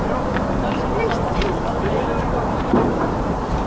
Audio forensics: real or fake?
fake